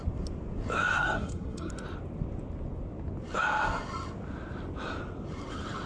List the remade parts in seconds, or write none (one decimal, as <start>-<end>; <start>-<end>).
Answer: 0.9-1.7